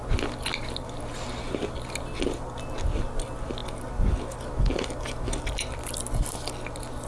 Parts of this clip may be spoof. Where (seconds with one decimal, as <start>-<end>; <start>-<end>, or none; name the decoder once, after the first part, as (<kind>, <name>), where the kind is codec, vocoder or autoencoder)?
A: none